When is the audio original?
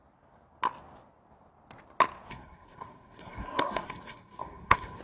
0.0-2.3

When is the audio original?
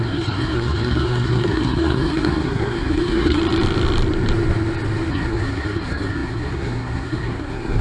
3.4-5.1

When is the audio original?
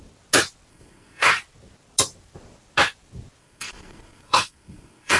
0.0-0.7; 1.3-3.4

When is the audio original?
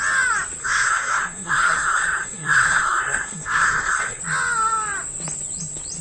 0.0-0.6; 4.2-6.0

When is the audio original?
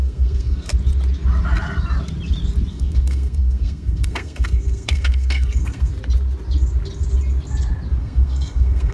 0.7-2.7; 5.9-8.0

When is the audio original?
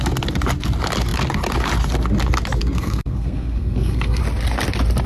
0.0-2.6; 4.2-5.1